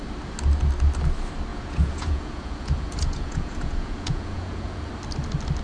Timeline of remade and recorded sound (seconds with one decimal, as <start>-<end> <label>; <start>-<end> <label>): 0.0-1.5 recorded; 1.5-4.9 remade; 4.9-5.6 recorded